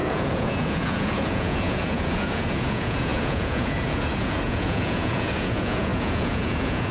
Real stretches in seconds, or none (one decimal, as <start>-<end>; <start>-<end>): none